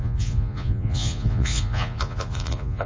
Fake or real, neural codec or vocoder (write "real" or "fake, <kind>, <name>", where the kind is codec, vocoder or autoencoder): fake, vocoder, Vocos